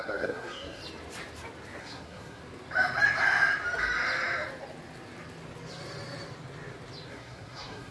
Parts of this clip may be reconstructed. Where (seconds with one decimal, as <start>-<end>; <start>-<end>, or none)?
0.0-0.8; 1.8-2.4; 7.1-7.9